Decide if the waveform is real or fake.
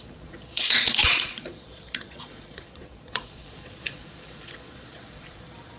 fake